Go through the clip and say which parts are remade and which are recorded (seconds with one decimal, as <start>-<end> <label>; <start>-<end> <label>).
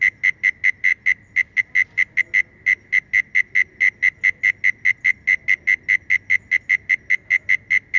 0.0-8.0 recorded